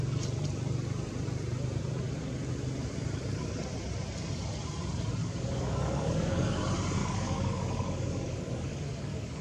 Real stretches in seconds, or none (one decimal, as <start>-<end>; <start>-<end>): 0.0-5.2; 6.6-7.0